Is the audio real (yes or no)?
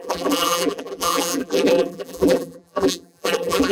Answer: no